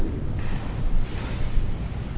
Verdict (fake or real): real